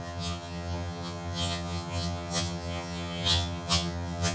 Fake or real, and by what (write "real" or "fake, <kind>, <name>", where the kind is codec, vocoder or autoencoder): fake, vocoder, HiFi-GAN